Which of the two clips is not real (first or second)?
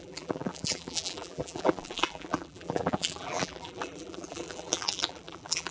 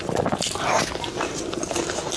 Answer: first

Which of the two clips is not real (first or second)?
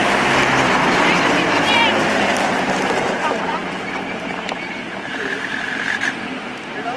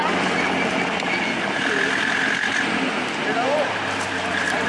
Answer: first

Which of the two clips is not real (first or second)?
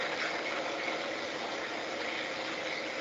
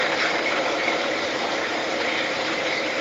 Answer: second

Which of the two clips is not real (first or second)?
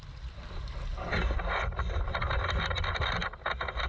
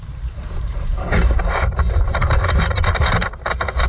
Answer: second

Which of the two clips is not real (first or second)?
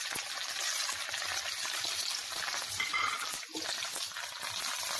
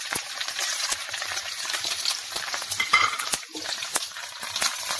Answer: second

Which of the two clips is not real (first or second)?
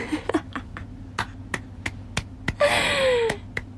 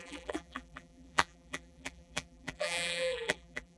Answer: second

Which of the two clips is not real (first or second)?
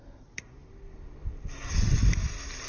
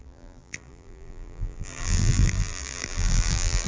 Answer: second